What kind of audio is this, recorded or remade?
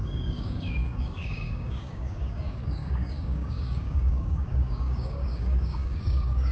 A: remade